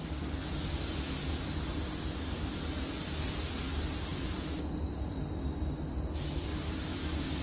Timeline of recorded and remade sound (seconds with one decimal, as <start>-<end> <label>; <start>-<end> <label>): 0.0-7.4 recorded